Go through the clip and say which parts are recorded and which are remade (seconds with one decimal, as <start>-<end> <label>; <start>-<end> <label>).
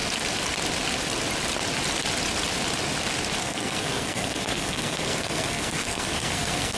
0.0-3.4 recorded; 3.4-6.8 remade